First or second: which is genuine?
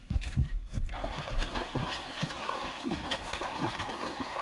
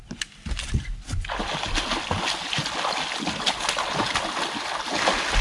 second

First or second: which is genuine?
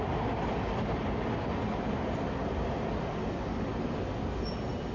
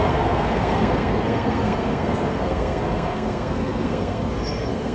first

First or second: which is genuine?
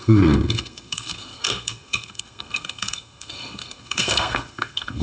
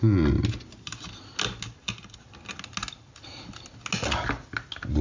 second